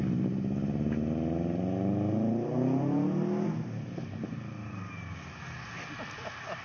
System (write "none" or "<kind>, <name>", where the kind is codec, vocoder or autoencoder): none